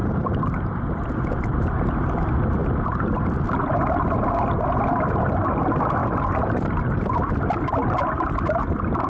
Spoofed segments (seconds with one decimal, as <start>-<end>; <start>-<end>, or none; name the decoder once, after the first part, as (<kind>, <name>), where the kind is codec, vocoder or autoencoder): 0.0-1.7 (vocoder, BigVGAN v2); 6.0-7.1